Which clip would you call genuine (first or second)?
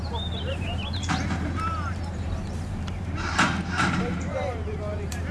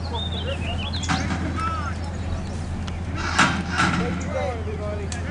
second